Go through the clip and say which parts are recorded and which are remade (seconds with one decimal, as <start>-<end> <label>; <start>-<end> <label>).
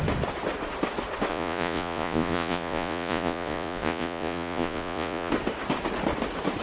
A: 0.0-1.3 recorded; 1.3-5.3 remade; 5.3-6.6 recorded